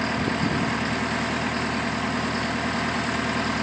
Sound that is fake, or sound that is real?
real